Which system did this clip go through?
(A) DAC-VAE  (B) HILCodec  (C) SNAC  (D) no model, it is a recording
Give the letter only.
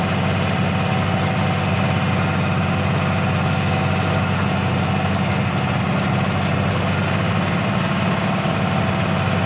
D